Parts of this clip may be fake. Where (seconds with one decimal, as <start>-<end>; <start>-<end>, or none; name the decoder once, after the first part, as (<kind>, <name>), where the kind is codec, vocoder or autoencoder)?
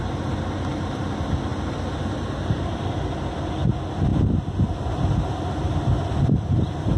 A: none